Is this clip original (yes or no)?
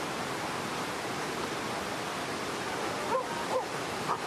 yes